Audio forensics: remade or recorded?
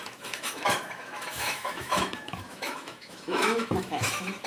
remade